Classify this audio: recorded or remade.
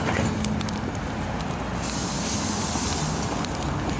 recorded